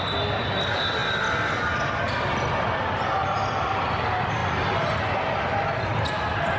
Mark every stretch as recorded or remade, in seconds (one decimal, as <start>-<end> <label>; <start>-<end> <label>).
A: 0.0-6.6 recorded